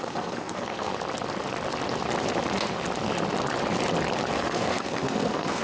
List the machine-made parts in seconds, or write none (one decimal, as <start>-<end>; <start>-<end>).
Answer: 0.0-0.9; 4.3-5.6